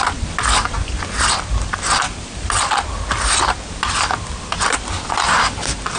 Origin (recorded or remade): recorded